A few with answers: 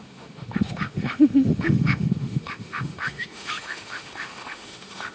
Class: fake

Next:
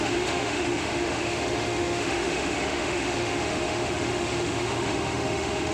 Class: fake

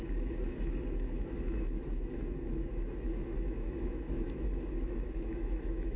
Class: fake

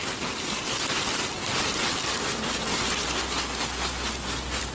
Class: real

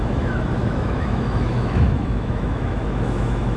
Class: fake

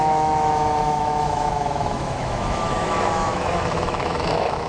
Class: fake